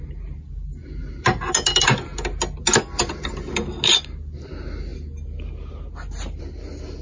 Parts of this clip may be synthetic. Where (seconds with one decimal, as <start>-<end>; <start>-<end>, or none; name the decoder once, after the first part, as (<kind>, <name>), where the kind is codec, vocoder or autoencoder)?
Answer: none